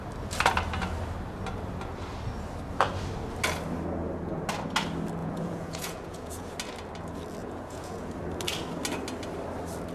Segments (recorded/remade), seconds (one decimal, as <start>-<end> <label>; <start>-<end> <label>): 0.0-5.2 recorded; 5.2-6.5 remade; 6.5-7.4 recorded; 7.4-8.1 remade; 8.1-9.9 recorded